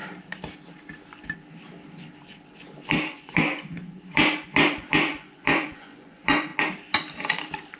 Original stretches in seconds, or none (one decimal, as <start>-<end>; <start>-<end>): 0.0-3.0; 6.5-7.8